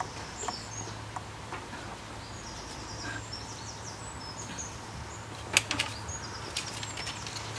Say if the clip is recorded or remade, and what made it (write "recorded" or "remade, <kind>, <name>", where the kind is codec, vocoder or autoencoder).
recorded